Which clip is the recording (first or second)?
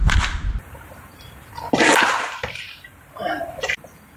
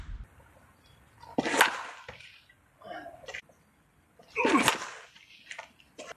second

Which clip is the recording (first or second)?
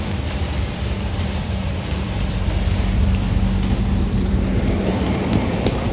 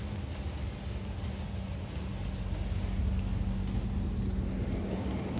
second